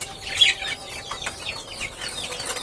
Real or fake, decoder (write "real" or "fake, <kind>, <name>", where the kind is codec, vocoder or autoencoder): real